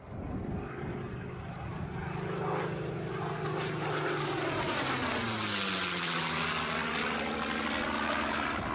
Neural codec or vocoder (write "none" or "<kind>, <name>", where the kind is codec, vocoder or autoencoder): none